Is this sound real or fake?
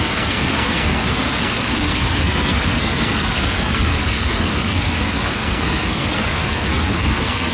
fake